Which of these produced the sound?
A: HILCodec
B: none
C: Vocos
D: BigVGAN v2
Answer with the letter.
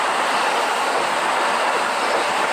B